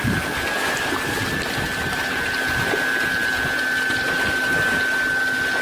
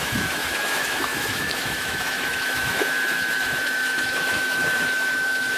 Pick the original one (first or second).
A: first